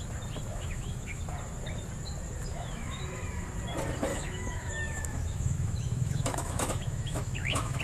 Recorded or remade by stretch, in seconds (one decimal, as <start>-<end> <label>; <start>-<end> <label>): 0.0-0.5 recorded; 0.5-1.2 remade; 1.2-2.5 recorded; 2.5-3.0 remade; 3.0-4.1 recorded; 4.1-7.8 remade